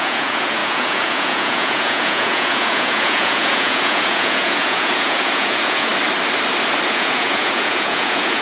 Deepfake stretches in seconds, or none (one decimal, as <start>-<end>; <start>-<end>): 0.0-5.9; 6.9-8.4